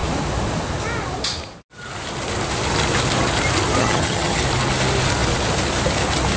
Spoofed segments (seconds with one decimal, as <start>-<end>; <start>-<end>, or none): 3.8-4.4